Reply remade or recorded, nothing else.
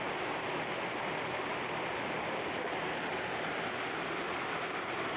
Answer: recorded